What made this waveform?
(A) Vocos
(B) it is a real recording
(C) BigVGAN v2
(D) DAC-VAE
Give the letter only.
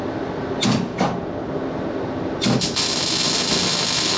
B